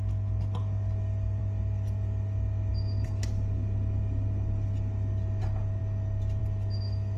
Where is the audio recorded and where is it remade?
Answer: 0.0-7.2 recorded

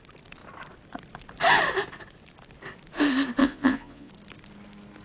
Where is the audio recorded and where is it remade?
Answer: 0.0-3.4 recorded; 3.4-4.1 remade; 4.1-5.0 recorded

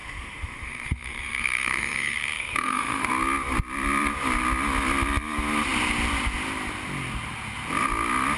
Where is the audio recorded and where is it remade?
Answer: 0.0-3.1 remade; 3.1-8.4 recorded

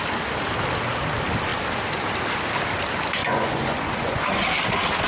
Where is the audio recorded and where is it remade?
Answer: 0.0-3.2 recorded; 3.2-4.3 remade; 4.3-5.1 recorded

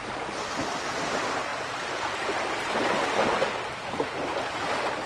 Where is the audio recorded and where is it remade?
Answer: 0.0-5.1 recorded

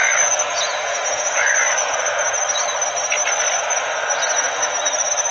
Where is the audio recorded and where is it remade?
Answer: 0.0-2.2 remade; 2.2-5.3 recorded

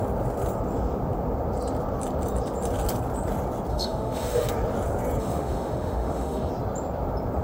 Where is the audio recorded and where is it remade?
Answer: 0.0-3.7 recorded; 3.7-4.5 remade; 4.5-5.2 recorded; 5.2-6.5 remade; 6.5-7.4 recorded